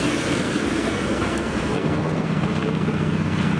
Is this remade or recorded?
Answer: remade